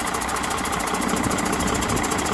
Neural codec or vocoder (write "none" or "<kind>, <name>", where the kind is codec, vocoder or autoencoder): vocoder, BigVGAN v2